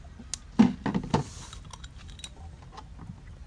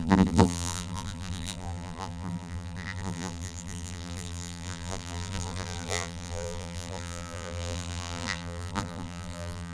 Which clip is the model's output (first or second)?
second